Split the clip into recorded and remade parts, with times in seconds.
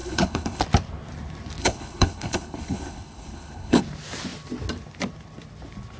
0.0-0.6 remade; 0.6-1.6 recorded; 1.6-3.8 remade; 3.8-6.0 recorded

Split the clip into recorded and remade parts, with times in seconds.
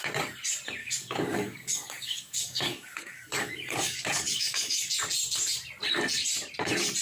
0.0-0.8 recorded; 0.8-5.0 remade; 5.0-7.0 recorded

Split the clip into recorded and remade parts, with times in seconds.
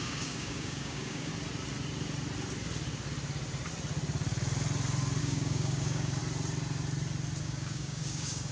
0.0-1.3 remade; 1.3-5.2 recorded; 5.2-6.2 remade; 6.2-7.4 recorded; 7.4-8.5 remade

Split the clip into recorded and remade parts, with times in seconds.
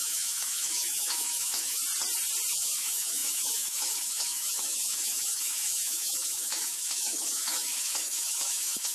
0.0-1.8 remade; 1.8-2.5 recorded; 2.5-8.9 remade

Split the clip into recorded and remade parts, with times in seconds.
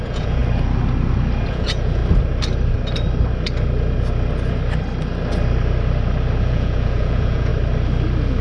0.0-0.4 remade; 0.4-1.5 recorded; 1.5-2.0 remade; 2.0-6.4 recorded; 6.4-7.5 remade; 7.5-8.4 recorded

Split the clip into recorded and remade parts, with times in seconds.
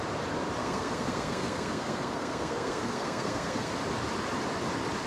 0.0-0.6 recorded; 0.6-3.7 remade; 3.7-5.1 recorded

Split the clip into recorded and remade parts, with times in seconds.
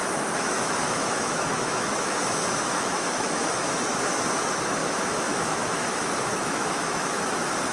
0.0-3.9 remade; 3.9-4.8 recorded; 4.8-7.2 remade; 7.2-7.7 recorded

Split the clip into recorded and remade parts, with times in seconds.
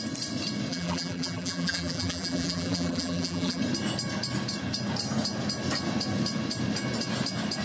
0.0-0.7 recorded; 0.7-3.6 remade; 3.6-7.6 recorded